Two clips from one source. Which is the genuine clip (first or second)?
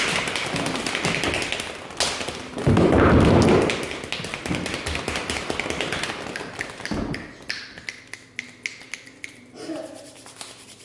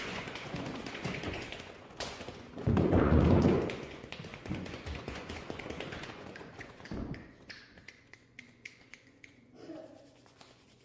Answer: first